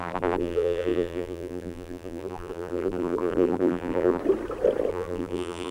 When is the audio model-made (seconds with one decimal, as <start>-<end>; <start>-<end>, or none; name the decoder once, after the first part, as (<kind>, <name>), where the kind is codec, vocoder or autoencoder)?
0.0-4.2 (vocoder, BigVGAN v2); 4.9-5.7